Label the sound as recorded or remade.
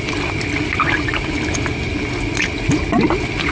recorded